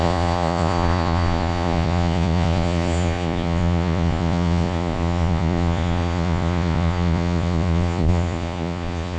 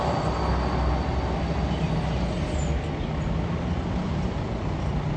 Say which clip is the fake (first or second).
first